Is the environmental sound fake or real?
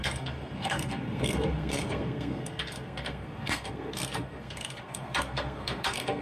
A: fake